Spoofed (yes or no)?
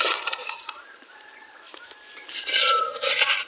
yes